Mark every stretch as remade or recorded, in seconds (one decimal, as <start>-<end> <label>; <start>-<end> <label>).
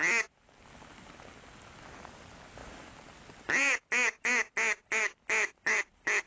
0.0-6.3 recorded